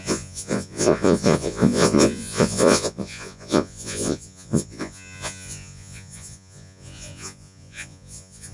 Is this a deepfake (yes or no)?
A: yes